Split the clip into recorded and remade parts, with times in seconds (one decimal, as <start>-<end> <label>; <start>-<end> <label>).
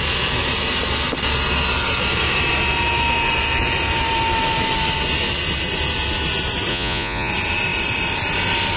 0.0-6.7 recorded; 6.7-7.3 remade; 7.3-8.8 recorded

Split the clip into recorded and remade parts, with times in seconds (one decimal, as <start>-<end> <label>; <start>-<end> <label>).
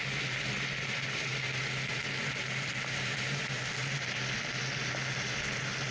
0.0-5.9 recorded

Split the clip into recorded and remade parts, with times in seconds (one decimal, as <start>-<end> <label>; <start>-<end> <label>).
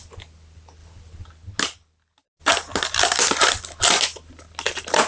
0.0-5.1 recorded